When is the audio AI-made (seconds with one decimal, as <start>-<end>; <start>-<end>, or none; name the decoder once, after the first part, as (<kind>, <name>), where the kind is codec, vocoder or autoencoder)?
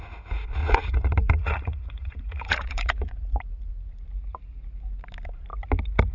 0.6-3.4 (vocoder, Vocos)